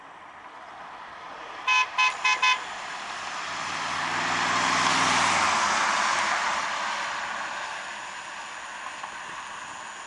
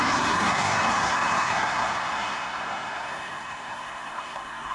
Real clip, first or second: first